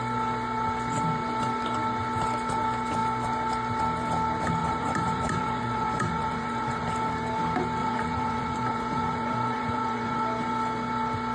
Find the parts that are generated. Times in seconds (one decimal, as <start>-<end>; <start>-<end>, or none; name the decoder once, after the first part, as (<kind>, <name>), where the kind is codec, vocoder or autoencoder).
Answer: 4.6-6.9 (vocoder, Vocos); 7.8-10.2